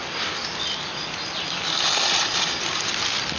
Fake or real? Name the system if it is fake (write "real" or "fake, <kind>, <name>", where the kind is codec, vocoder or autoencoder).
real